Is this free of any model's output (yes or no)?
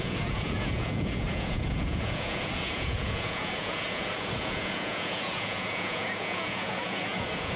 no